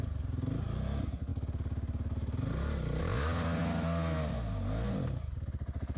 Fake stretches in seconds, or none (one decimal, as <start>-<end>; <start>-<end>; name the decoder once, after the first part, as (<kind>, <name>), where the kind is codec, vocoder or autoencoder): none